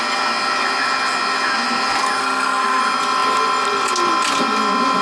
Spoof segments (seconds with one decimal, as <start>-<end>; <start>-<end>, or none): 2.2-2.8